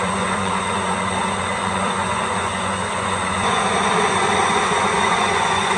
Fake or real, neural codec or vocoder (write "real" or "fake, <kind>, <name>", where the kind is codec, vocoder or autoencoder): fake, vocoder, Vocos